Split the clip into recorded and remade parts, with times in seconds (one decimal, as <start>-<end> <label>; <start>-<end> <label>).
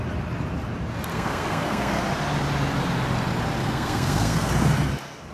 0.0-1.1 recorded; 1.1-2.0 remade; 2.0-3.6 recorded; 3.6-4.5 remade; 4.5-5.3 recorded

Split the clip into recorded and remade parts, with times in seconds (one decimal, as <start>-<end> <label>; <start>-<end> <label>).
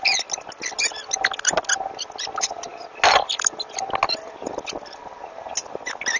0.0-6.2 recorded